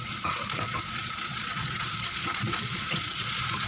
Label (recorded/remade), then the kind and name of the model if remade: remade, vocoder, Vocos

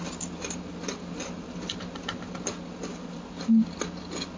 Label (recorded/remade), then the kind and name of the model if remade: recorded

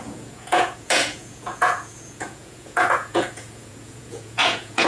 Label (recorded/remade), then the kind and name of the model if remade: remade, vocoder, Vocos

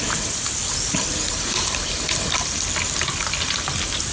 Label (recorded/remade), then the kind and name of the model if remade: recorded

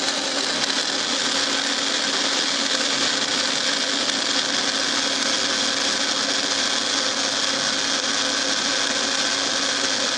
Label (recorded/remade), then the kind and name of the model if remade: recorded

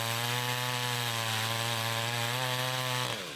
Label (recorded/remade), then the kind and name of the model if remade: recorded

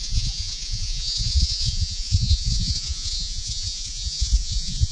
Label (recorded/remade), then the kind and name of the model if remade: remade, vocoder, Vocos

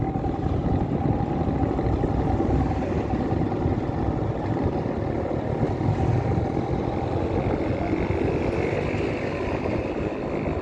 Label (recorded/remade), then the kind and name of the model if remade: recorded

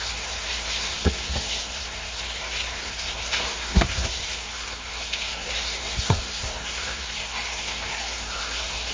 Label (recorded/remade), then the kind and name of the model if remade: remade, codec, SNAC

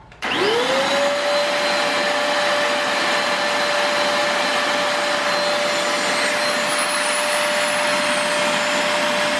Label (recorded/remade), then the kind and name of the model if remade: recorded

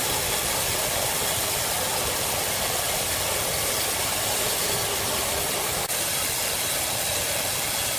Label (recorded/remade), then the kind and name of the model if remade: recorded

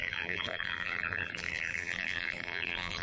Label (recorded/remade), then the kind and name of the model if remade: remade, vocoder, BigVGAN v2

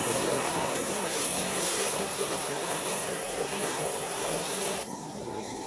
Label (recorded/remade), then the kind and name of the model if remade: remade, codec, SNAC